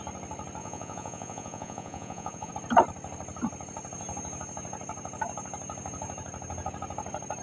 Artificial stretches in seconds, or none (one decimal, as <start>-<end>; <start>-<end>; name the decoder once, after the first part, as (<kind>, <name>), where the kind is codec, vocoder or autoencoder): 0.6-2.5 (vocoder, Vocos)